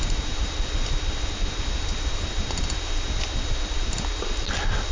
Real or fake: real